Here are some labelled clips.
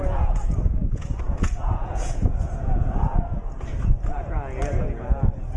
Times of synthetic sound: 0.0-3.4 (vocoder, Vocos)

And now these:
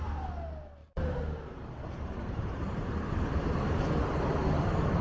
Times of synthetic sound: 0.8-3.8 (vocoder, BigVGAN v2)